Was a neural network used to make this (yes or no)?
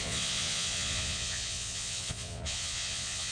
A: yes